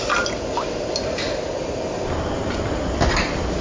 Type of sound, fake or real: real